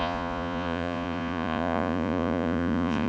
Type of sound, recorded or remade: remade